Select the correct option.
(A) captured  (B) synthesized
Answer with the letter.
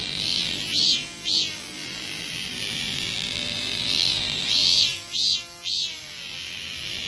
B